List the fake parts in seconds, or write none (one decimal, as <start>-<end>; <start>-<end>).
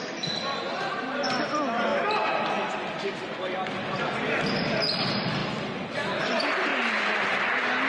0.0-1.9; 4.5-5.4; 6.2-6.7; 7.2-7.9